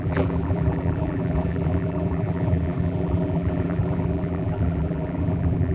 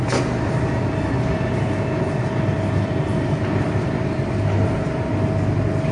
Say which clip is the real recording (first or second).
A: second